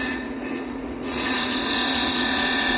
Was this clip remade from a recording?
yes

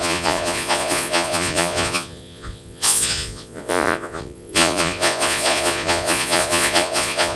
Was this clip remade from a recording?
yes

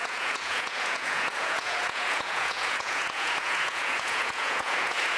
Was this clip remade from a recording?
yes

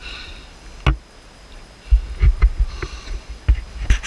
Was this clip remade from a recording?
no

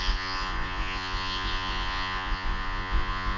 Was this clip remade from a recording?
yes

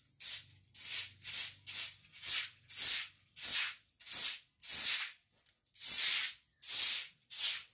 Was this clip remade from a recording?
no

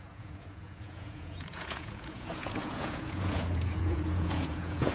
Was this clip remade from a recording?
yes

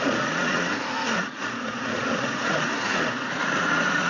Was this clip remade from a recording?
yes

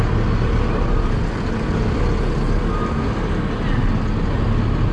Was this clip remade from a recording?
no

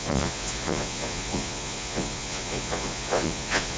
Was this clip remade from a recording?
yes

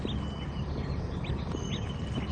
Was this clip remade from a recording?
no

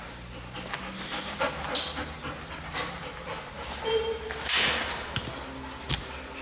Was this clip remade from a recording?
no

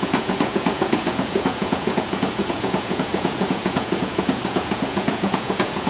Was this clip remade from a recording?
yes